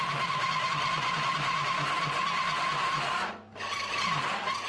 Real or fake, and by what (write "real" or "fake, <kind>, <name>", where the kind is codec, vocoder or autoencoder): real